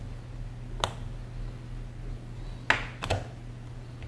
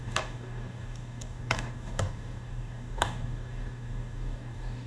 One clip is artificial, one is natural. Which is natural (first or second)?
first